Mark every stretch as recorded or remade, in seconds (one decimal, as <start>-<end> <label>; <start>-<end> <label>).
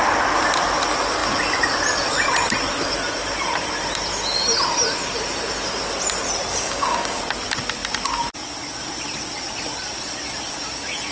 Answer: 0.0-6.5 recorded; 6.5-7.2 remade; 7.2-11.1 recorded